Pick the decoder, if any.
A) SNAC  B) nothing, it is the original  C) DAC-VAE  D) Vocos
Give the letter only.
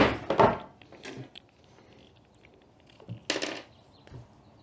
B